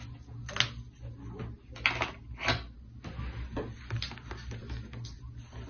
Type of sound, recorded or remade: recorded